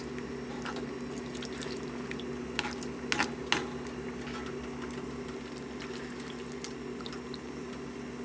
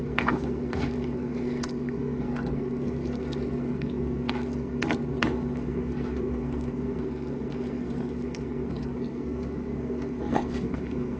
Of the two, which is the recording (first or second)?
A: first